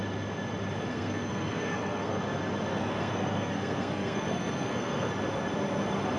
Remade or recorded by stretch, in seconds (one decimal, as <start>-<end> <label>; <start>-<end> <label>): 0.0-0.9 recorded; 0.9-2.2 remade; 2.2-2.7 recorded; 2.7-5.1 remade; 5.1-6.2 recorded